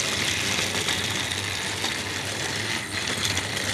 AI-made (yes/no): no